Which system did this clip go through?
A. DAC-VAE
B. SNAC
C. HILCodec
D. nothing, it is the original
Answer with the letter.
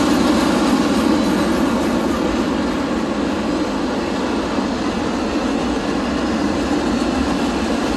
D